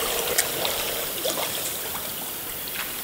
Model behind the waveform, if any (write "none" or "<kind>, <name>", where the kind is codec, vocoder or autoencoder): none